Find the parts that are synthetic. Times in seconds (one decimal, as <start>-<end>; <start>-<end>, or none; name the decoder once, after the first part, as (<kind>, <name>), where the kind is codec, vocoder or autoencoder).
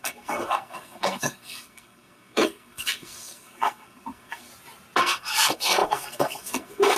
0.0-4.5 (codec, SNAC); 5.0-7.0